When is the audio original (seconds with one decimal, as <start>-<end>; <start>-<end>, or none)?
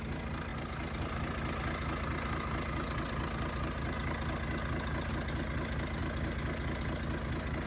0.0-7.7